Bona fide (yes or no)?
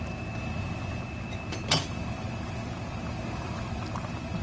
yes